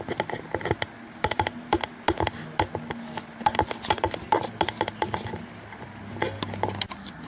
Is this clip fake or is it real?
real